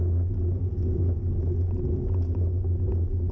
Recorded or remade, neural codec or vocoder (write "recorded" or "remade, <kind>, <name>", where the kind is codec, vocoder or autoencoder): recorded